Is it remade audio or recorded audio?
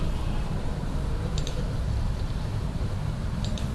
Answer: remade